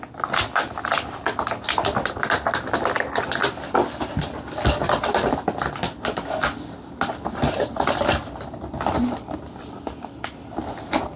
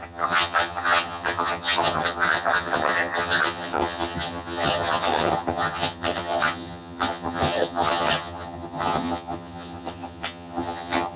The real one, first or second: first